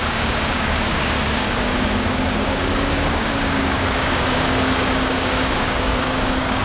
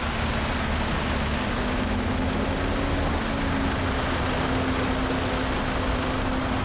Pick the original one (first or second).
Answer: second